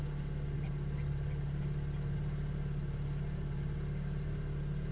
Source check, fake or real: real